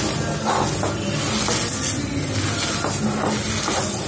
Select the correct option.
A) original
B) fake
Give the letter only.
A